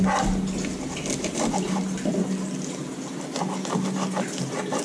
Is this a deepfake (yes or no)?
no